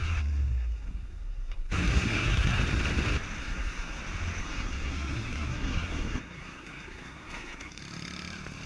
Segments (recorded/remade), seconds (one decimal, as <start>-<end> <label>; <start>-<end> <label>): 0.0-2.6 remade; 2.6-3.4 recorded; 3.4-4.0 remade; 4.0-4.4 recorded; 4.4-7.8 remade; 7.8-8.7 recorded